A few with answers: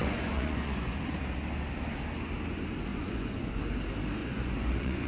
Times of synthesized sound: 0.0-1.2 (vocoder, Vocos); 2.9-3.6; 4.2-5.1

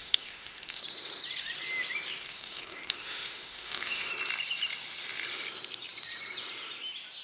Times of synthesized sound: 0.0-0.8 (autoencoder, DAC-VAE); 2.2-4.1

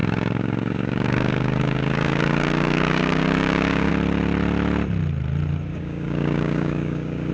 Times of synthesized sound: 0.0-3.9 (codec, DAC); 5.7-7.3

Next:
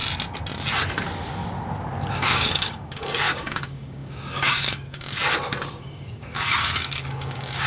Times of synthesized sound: 2.1-5.2 (codec, DAC); 5.7-7.7